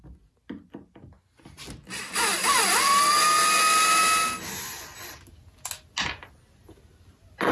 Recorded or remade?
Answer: recorded